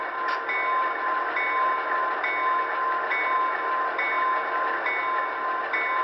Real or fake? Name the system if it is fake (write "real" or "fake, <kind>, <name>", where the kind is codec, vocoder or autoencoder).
real